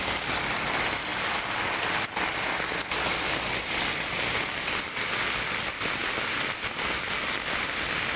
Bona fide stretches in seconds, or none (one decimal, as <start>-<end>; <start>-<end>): 0.0-8.2